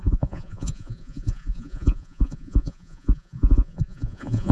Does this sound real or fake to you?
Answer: fake